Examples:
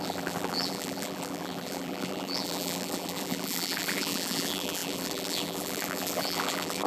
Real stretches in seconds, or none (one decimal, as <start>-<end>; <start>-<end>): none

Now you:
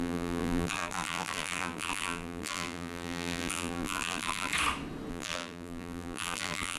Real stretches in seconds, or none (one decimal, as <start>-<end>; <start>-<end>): 4.5-5.1

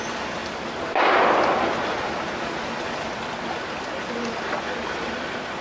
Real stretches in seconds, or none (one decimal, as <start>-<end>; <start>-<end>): 0.0-5.6